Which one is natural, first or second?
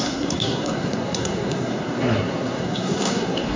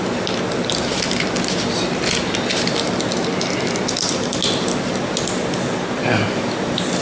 second